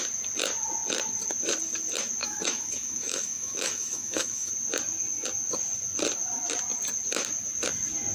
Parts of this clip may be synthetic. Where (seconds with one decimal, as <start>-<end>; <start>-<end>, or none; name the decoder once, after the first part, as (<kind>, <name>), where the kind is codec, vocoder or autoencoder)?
2.2-4.5 (autoencoder, DAC-VAE)

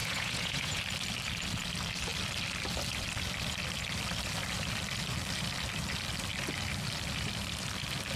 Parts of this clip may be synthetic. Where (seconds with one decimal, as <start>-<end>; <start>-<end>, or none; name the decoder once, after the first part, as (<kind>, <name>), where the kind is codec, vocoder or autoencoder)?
0.0-0.8 (vocoder, Vocos)

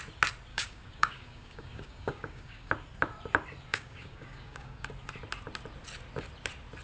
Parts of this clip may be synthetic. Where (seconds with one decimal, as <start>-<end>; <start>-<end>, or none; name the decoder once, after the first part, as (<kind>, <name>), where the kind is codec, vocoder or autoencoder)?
0.5-2.7 (codec, DAC); 3.7-4.9

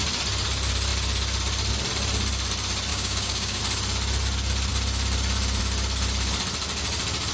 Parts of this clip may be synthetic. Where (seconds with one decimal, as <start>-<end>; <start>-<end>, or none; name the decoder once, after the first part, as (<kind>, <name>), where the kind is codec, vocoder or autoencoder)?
2.9-3.6 (codec, DAC)